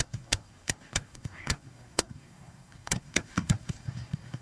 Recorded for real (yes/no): no